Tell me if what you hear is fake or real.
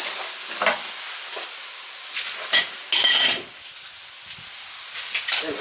real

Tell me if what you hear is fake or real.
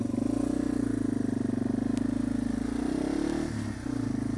real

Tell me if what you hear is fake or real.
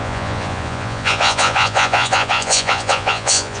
fake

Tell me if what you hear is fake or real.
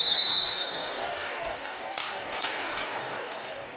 fake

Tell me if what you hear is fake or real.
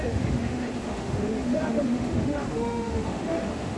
fake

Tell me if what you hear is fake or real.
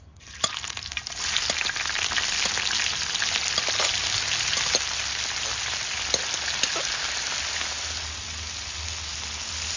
real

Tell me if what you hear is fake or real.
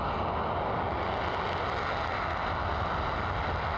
real